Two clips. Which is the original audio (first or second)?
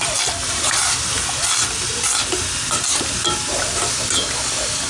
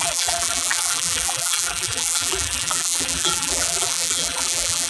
first